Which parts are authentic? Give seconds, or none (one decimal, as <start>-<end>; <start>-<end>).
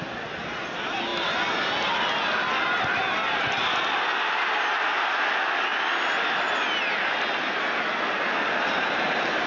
0.0-9.5